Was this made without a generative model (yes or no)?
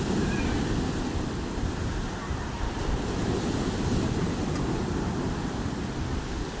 yes